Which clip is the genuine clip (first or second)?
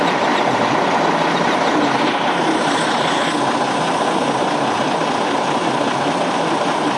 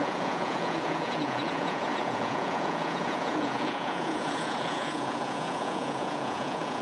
first